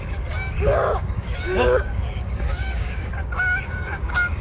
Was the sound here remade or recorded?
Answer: remade